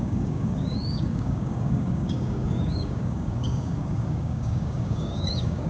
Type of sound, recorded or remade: remade